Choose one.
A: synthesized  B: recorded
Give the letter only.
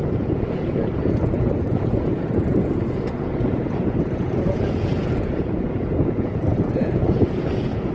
A